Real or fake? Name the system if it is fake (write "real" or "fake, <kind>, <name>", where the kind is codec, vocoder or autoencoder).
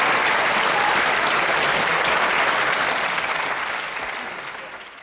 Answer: real